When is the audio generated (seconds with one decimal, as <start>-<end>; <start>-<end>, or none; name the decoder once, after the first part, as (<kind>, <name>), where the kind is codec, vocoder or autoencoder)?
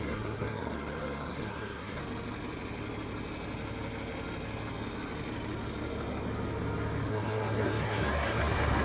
0.0-2.0 (codec, SNAC); 7.1-8.8